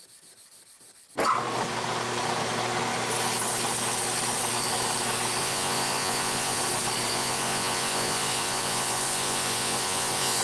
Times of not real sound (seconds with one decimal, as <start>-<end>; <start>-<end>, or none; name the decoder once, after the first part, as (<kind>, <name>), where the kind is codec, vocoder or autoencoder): 5.4-6.6 (vocoder, Vocos); 7.1-10.4